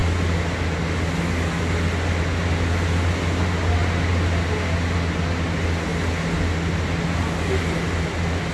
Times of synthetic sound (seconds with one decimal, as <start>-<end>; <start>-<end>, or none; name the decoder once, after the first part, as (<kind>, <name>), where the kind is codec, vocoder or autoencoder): none